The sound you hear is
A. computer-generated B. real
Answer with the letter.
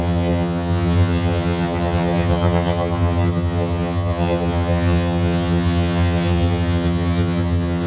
A